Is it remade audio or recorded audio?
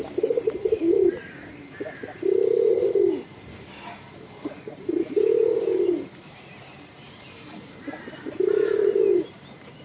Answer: remade